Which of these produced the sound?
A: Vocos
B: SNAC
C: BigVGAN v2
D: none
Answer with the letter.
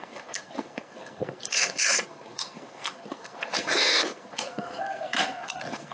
B